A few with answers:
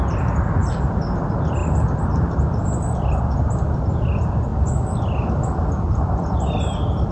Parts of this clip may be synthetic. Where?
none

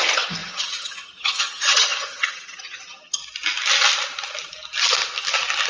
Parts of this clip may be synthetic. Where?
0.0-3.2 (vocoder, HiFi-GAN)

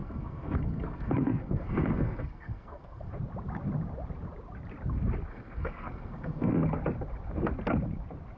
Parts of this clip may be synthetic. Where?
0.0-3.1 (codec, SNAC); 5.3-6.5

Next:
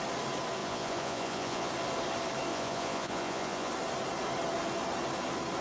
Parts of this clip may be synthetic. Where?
0.6-1.7 (vocoder, Vocos); 2.5-3.7